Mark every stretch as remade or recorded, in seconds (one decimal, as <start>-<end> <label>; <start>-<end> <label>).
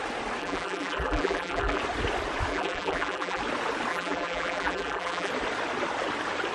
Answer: 0.0-0.4 recorded; 0.4-1.8 remade; 1.8-2.5 recorded; 2.5-3.4 remade; 3.4-3.9 recorded; 3.9-5.3 remade; 5.3-6.5 recorded